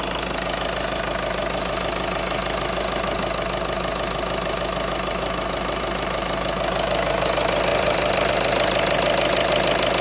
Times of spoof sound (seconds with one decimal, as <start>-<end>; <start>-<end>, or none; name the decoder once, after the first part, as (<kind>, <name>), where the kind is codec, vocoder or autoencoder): 7.7-8.3 (vocoder, BigVGAN v2)